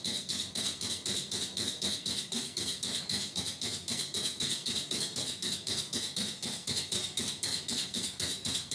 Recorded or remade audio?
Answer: remade